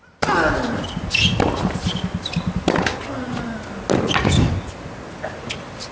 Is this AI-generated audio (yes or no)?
no